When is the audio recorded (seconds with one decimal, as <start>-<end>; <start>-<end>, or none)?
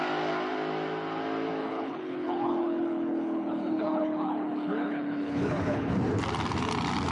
0.0-1.6; 5.9-7.1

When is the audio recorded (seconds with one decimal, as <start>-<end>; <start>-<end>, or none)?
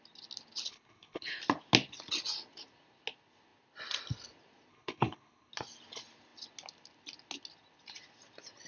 0.0-0.7; 1.4-4.7; 5.5-8.7